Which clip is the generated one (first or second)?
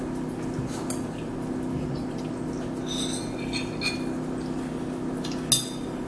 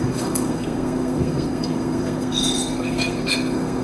second